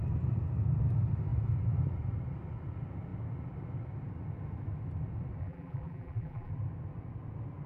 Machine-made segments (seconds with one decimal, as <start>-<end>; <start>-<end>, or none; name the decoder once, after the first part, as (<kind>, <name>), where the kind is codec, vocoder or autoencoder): 5.4-6.5 (vocoder, BigVGAN v2)

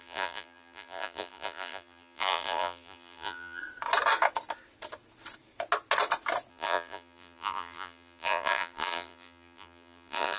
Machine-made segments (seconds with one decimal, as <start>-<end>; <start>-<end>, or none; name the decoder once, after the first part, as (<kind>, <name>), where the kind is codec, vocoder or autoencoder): 0.0-3.6 (vocoder, BigVGAN v2); 6.5-10.4

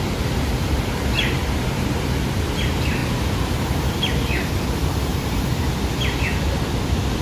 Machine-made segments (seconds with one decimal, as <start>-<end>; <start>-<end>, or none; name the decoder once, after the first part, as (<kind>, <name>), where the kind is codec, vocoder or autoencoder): 0.6-1.9 (vocoder, BigVGAN v2); 3.0-3.9; 5.1-5.7

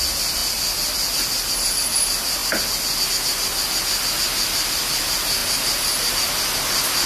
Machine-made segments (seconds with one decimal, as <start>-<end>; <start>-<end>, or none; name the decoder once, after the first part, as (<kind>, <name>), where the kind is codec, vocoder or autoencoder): 5.4-6.1 (vocoder, BigVGAN v2)